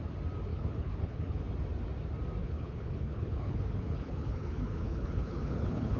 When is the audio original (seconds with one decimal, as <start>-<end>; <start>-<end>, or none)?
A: 0.0-0.5; 1.4-2.4